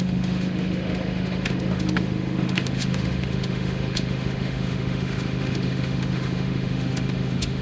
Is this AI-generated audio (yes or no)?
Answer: yes